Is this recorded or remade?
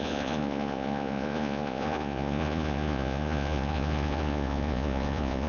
remade